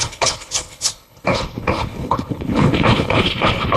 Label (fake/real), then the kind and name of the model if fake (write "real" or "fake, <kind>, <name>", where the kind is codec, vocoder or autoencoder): fake, codec, HILCodec